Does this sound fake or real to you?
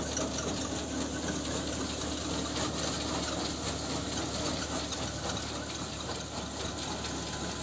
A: real